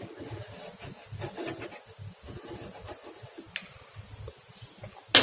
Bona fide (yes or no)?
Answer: yes